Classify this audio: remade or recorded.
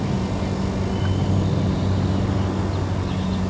recorded